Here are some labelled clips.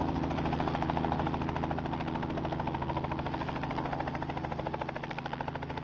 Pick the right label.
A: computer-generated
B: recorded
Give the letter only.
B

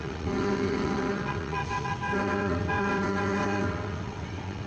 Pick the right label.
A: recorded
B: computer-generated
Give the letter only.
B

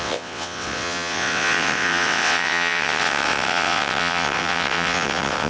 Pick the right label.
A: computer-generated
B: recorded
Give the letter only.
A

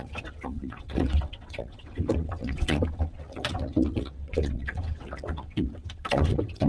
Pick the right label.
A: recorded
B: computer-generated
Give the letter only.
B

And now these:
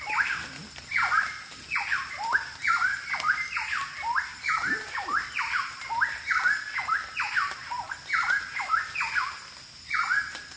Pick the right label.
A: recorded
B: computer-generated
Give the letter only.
A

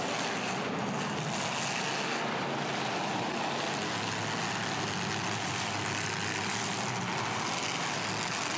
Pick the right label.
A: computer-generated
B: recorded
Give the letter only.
B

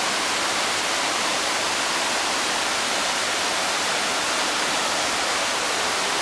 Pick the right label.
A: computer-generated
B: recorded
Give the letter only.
B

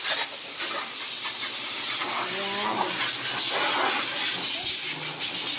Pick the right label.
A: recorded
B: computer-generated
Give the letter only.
A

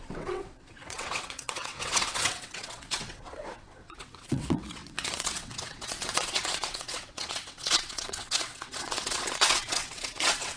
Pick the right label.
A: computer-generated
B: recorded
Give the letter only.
A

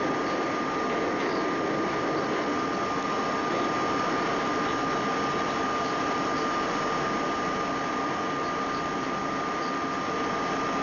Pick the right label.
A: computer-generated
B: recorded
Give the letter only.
B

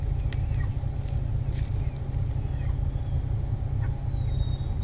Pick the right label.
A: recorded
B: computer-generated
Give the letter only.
A